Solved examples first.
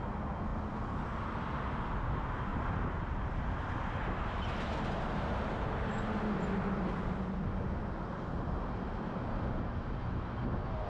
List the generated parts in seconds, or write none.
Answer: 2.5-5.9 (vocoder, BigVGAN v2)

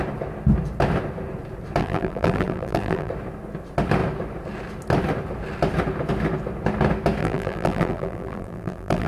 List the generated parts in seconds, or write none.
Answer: 1.8-3.1 (vocoder, BigVGAN v2); 7.2-9.1